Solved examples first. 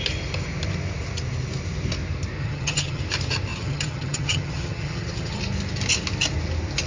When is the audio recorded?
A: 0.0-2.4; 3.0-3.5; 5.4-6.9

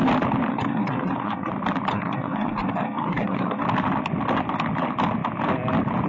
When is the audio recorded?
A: 0.0-0.5; 1.5-1.9; 3.6-6.1

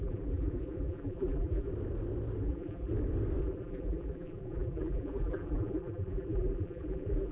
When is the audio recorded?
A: 1.7-2.4; 2.9-3.4

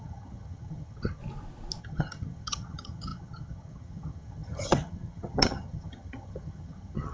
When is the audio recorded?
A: 1.2-1.8

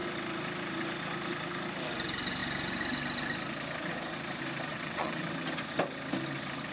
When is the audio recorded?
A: 0.0-4.7; 5.2-6.7

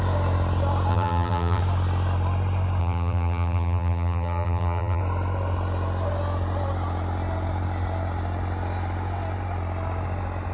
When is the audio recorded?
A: 0.0-0.9; 1.6-2.8; 5.0-10.5